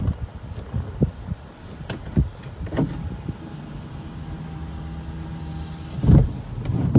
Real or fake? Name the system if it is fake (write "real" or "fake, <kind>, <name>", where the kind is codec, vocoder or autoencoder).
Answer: real